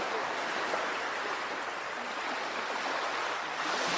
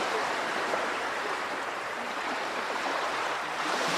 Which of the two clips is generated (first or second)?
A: second